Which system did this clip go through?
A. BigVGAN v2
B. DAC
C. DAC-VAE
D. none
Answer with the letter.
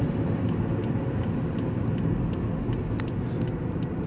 D